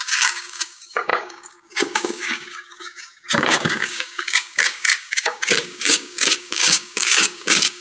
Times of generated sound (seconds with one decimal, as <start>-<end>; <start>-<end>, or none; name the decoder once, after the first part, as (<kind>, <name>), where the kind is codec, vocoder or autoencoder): 0.0-7.8 (codec, DAC)